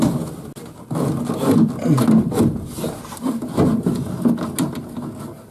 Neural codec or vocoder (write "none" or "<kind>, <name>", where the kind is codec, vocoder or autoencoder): none